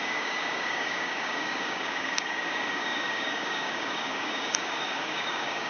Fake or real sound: fake